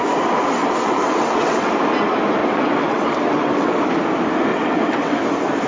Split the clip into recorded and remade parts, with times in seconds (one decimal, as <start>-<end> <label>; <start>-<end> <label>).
0.0-0.6 recorded; 0.6-1.7 remade; 1.7-2.4 recorded; 2.4-3.8 remade; 3.8-4.5 recorded; 4.5-5.2 remade; 5.2-5.7 recorded